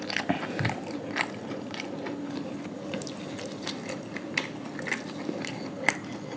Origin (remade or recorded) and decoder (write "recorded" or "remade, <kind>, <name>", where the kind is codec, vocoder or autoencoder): recorded